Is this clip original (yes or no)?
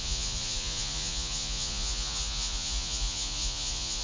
no